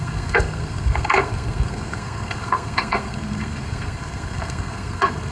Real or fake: fake